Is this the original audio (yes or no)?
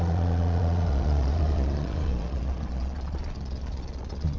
no